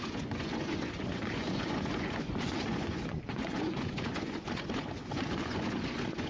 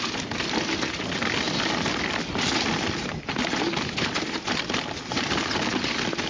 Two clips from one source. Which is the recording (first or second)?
second